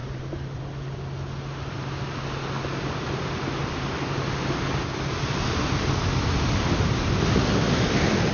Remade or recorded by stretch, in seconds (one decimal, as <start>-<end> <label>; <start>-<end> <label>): 0.0-0.6 remade; 0.6-8.3 recorded